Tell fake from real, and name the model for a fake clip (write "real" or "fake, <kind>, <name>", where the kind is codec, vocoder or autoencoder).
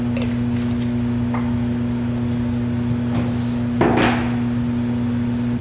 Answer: real